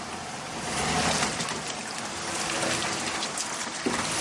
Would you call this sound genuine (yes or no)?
yes